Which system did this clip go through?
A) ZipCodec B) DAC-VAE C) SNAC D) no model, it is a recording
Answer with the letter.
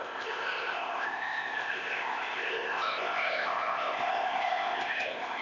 A